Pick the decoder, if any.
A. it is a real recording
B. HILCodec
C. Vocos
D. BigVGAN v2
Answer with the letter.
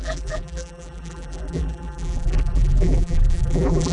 D